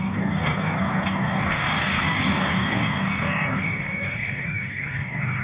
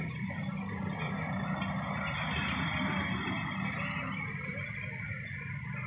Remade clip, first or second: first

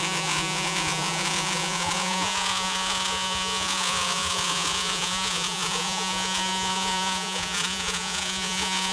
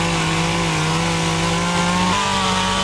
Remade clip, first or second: first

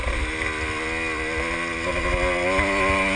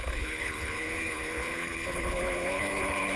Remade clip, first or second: second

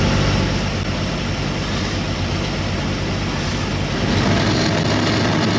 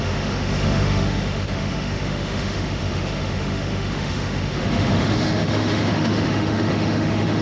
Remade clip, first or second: second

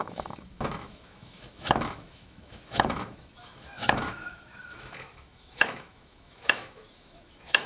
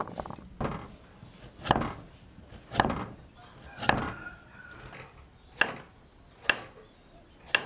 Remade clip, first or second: first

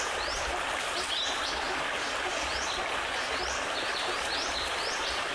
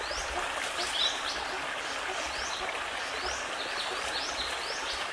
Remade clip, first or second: first